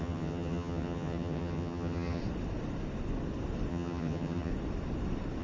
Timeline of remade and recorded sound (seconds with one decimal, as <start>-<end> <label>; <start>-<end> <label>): 0.0-2.2 remade; 2.2-3.7 recorded; 3.7-4.5 remade; 4.5-5.4 recorded